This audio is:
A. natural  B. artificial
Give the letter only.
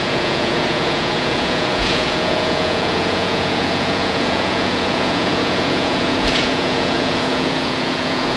B